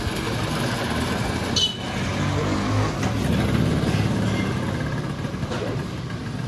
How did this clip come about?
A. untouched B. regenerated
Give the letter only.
A